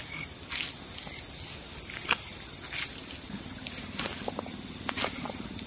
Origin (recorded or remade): recorded